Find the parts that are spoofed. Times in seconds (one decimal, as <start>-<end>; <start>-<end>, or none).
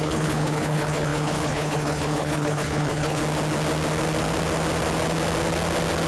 0.0-3.2